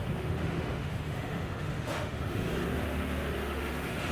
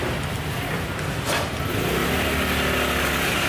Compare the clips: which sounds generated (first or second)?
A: first